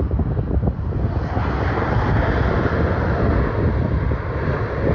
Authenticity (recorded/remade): recorded